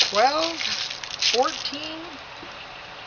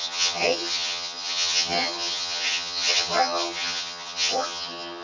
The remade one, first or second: second